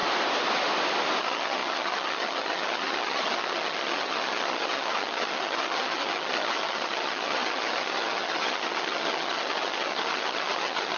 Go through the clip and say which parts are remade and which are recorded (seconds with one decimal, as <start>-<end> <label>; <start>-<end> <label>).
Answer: 0.0-1.2 recorded; 1.2-11.0 remade